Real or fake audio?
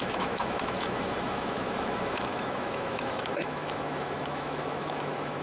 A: fake